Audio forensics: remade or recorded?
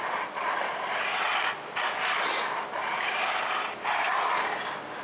recorded